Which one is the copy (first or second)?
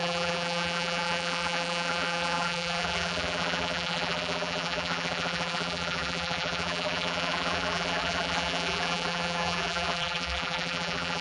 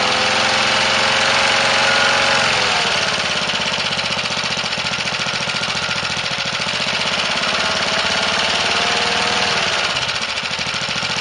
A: first